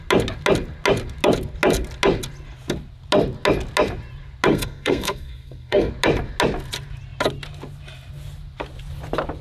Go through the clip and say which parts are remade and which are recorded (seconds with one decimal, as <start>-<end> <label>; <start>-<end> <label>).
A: 0.0-4.5 recorded; 4.5-5.9 remade; 5.9-9.4 recorded